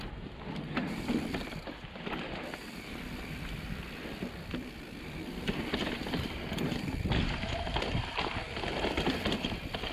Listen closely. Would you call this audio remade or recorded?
remade